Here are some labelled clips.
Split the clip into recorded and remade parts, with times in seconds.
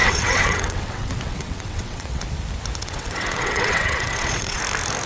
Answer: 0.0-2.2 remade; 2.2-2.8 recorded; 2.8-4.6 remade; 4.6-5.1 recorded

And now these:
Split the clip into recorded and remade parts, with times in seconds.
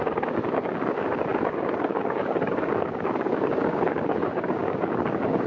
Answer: 0.0-5.5 remade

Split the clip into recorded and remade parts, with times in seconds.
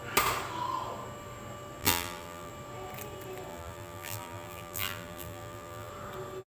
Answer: 0.0-1.8 recorded; 1.8-2.5 remade; 2.5-3.5 recorded; 3.5-5.9 remade; 5.9-6.5 recorded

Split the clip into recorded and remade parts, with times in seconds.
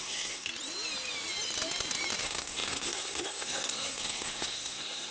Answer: 0.0-0.5 remade; 0.5-2.2 recorded; 2.2-5.1 remade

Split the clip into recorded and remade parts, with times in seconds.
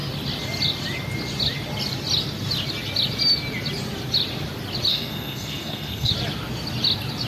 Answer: 0.0-4.9 recorded; 4.9-6.1 remade; 6.1-7.3 recorded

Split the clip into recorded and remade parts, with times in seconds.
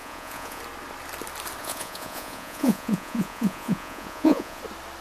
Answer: 0.0-0.6 remade; 0.6-1.6 recorded; 1.6-4.6 remade; 4.6-5.0 recorded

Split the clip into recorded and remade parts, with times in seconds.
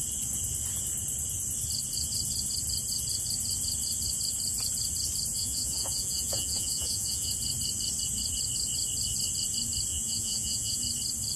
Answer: 0.0-5.3 recorded; 5.3-7.3 remade; 7.3-9.9 recorded; 9.9-10.8 remade; 10.8-11.4 recorded